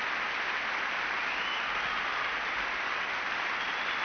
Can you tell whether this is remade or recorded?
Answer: recorded